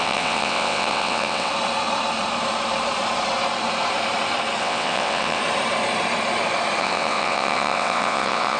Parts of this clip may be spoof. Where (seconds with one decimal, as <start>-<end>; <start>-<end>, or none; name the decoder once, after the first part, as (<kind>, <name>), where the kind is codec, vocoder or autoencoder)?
0.0-1.5 (vocoder, WaveNeXt); 4.6-5.4; 6.8-8.6